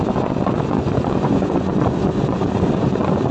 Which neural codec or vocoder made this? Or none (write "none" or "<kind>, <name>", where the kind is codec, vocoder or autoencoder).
vocoder, Vocos